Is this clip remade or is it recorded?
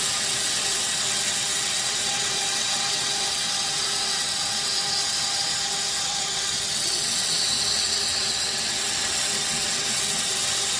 remade